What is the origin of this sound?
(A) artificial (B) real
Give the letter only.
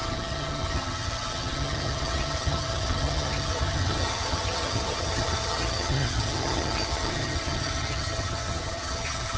A